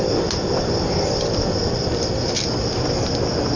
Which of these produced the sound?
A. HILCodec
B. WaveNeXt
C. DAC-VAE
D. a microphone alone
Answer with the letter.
D